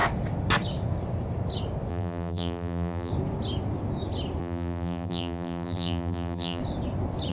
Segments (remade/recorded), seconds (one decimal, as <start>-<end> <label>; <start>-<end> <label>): 0.0-1.9 recorded; 1.9-3.1 remade; 3.1-4.4 recorded; 4.4-6.6 remade; 6.6-7.3 recorded